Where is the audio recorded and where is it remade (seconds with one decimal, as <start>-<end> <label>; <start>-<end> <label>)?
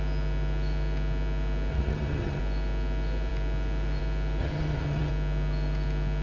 0.0-1.7 recorded; 1.7-2.4 remade; 2.4-4.4 recorded; 4.4-5.1 remade; 5.1-6.2 recorded